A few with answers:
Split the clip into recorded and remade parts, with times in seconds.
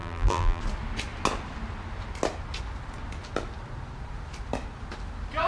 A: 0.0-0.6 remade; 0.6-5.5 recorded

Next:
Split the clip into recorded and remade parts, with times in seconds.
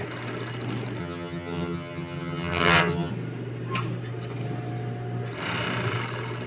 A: 0.0-1.0 recorded; 1.0-3.1 remade; 3.1-6.5 recorded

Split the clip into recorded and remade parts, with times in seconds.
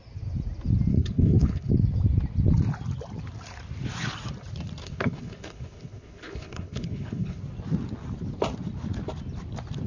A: 0.0-0.9 recorded; 0.9-1.7 remade; 1.7-4.8 recorded; 4.8-7.4 remade; 7.4-9.9 recorded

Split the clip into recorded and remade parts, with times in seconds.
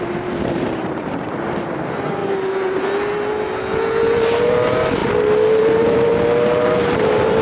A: 0.0-2.2 remade; 2.2-4.4 recorded; 4.4-5.0 remade; 5.0-5.6 recorded; 5.6-6.1 remade; 6.1-6.8 recorded; 6.8-7.4 remade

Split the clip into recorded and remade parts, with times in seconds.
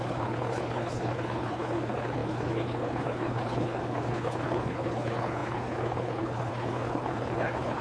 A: 0.0-7.8 remade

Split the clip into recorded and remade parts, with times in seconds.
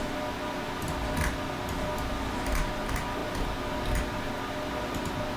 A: 0.0-5.4 recorded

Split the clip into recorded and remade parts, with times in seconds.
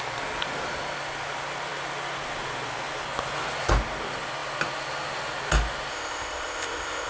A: 0.0-5.9 recorded; 5.9-7.1 remade